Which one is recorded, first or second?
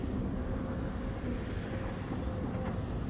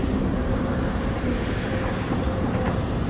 first